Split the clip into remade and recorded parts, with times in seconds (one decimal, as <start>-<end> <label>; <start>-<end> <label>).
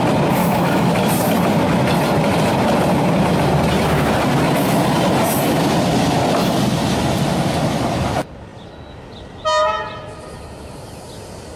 0.0-0.4 recorded; 0.4-1.1 remade; 1.1-11.6 recorded